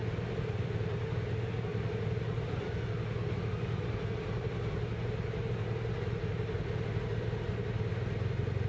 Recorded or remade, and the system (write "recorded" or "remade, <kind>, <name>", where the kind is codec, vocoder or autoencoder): recorded